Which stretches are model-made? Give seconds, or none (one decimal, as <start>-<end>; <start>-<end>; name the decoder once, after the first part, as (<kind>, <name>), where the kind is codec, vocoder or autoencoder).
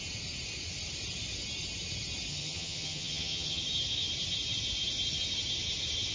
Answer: 2.3-3.6 (vocoder, HiFi-GAN)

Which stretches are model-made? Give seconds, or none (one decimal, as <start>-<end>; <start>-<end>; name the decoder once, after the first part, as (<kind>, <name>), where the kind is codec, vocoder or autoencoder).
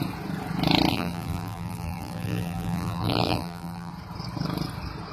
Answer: 0.9-3.9 (vocoder, BigVGAN v2)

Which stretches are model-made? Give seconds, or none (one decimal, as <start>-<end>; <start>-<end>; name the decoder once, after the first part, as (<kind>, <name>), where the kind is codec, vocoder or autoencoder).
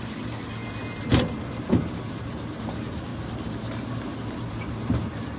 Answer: none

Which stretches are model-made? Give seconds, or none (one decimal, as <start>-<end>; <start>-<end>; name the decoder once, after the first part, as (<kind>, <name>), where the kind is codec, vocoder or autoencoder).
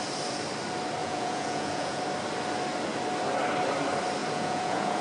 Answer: 1.0-2.0 (vocoder, Vocos); 4.2-5.0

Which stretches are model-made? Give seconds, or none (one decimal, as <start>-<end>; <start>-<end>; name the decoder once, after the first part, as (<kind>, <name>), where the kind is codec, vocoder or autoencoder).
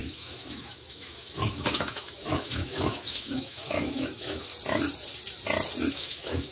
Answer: 0.0-4.5 (autoencoder, DAC-VAE); 5.9-6.5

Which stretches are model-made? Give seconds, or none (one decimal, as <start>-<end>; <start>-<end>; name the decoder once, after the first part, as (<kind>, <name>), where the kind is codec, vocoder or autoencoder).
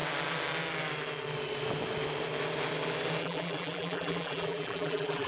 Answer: 3.2-5.3 (vocoder, BigVGAN v2)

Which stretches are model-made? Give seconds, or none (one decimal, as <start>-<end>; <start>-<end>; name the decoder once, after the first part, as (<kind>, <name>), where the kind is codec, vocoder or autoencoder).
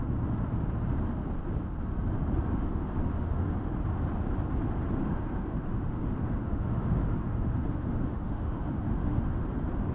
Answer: 2.5-3.4 (autoencoder, DAC-VAE); 5.0-9.4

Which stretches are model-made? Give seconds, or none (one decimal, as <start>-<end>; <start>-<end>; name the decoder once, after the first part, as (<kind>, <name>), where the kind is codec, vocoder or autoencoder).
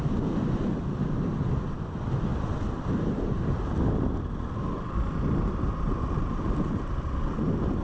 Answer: 2.3-2.9 (vocoder, BigVGAN v2)